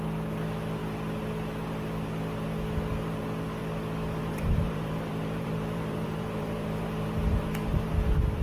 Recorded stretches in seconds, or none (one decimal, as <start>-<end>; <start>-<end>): 0.0-4.2; 7.9-8.4